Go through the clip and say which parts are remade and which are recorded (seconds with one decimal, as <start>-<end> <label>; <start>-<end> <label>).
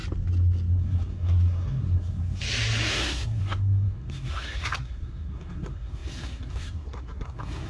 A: 0.0-0.7 recorded; 0.7-2.4 remade; 2.4-2.9 recorded; 2.9-7.7 remade